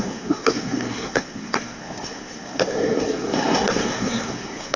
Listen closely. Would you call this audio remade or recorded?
remade